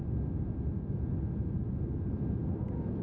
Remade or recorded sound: recorded